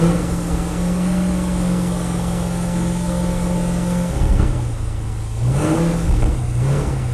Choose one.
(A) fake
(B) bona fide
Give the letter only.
A